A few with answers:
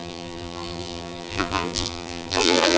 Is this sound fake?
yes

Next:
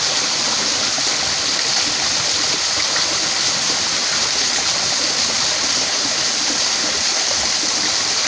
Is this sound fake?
no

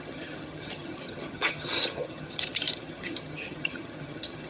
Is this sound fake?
yes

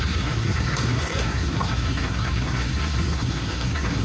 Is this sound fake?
yes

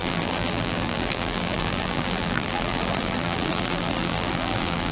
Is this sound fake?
yes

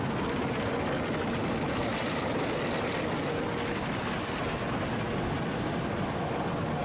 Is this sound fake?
no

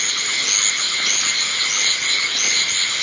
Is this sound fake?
no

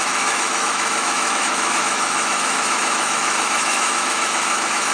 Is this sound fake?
yes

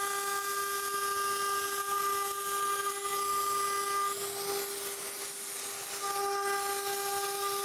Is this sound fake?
no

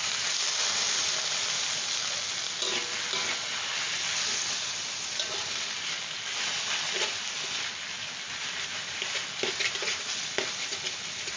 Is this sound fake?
no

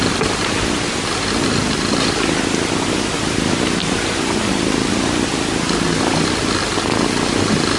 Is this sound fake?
no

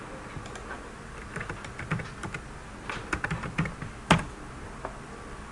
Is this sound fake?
no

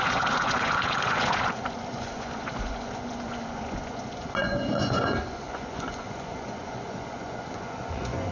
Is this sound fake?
yes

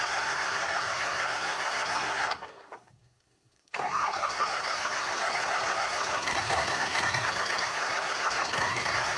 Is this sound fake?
yes